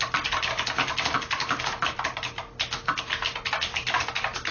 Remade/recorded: recorded